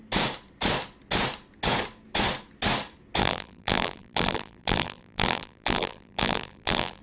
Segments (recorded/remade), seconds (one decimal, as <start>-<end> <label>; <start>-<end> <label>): 0.0-3.2 recorded; 3.2-7.0 remade